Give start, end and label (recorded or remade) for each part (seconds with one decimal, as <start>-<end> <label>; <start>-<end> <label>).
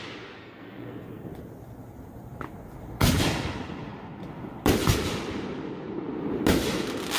0.0-0.4 recorded; 0.4-1.3 remade; 1.3-7.2 recorded